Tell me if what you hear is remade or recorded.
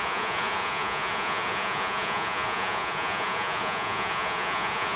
remade